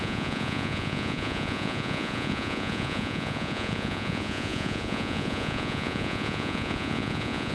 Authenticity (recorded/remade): remade